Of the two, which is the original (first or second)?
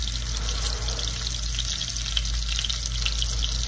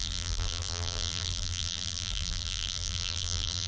first